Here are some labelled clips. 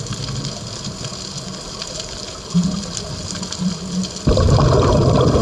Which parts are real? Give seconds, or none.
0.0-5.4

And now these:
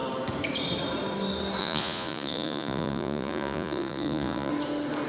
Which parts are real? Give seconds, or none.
0.0-1.6; 4.5-5.1

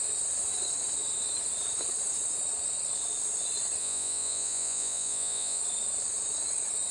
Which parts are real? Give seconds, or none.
0.0-3.8; 5.6-6.9